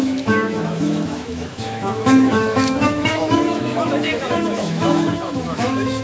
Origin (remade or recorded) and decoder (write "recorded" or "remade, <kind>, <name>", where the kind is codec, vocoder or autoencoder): remade, autoencoder, DAC-VAE